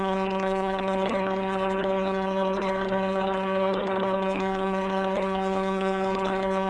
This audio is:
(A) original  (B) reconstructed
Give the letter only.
B